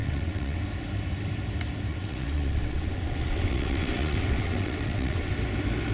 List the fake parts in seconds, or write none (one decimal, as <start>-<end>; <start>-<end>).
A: 0.0-0.6; 1.9-5.3